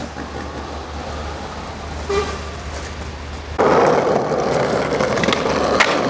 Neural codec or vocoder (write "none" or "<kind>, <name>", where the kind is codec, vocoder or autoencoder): none